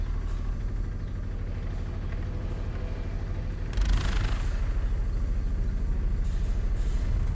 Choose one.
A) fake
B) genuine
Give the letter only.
B